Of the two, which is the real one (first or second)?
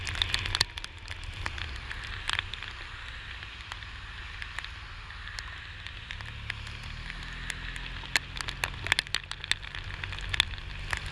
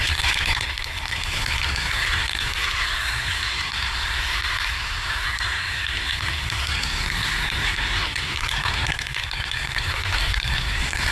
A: first